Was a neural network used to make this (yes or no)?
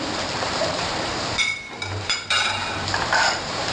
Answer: yes